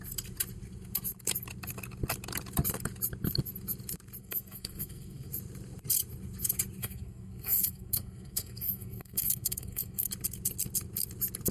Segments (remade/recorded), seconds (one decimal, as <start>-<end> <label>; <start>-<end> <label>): 0.0-4.2 recorded; 4.2-5.3 remade; 5.3-6.8 recorded; 6.8-10.1 remade; 10.1-11.5 recorded

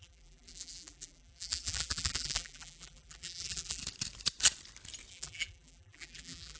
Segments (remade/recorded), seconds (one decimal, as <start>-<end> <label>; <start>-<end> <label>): 0.0-3.8 remade; 3.8-5.1 recorded; 5.1-6.6 remade

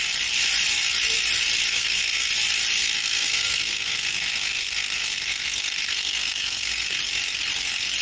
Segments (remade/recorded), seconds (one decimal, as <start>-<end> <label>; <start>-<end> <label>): 0.0-1.7 recorded; 1.7-2.3 remade; 2.3-2.8 recorded; 2.8-7.0 remade; 7.0-8.0 recorded

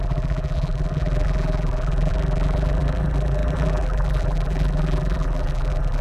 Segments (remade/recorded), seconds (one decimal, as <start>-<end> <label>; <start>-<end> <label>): 0.0-6.0 remade

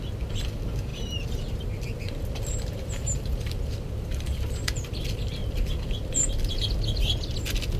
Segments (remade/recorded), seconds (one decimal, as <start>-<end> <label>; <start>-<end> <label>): 0.0-0.9 recorded; 0.9-4.8 remade; 4.8-5.4 recorded; 5.4-6.5 remade; 6.5-7.8 recorded

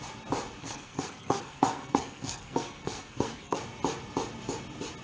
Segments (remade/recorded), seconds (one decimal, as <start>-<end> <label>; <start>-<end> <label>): 0.0-0.6 recorded; 0.6-3.6 remade; 3.6-5.0 recorded

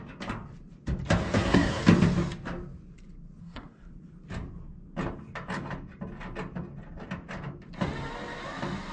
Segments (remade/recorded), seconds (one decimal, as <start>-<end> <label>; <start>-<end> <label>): 0.0-1.2 recorded; 1.2-1.8 remade; 1.8-3.4 recorded; 3.4-3.9 remade; 3.9-8.9 recorded

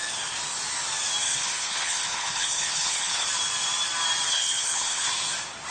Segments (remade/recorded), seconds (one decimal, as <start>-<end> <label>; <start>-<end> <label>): 0.0-1.2 recorded; 1.2-3.3 remade; 3.3-4.3 recorded; 4.3-5.1 remade; 5.1-5.7 recorded